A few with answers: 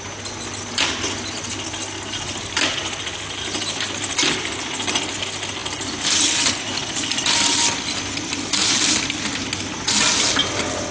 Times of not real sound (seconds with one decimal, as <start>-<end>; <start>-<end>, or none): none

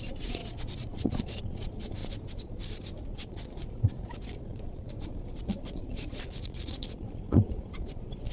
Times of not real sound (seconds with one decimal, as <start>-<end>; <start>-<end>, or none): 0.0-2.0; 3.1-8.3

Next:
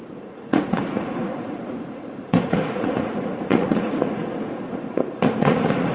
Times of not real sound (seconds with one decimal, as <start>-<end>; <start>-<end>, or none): 0.0-5.9

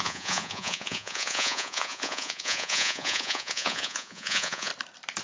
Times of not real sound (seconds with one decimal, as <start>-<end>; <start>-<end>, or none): 0.0-4.7